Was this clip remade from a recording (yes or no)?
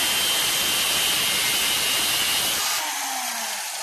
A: no